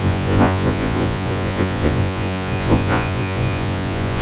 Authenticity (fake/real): fake